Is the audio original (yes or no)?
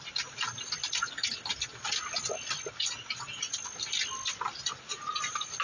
yes